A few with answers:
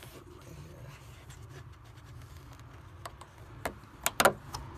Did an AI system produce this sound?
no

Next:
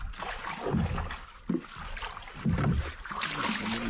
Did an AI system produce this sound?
no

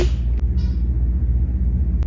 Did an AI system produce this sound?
no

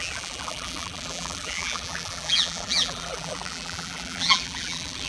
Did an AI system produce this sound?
yes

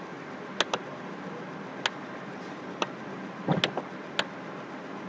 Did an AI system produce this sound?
no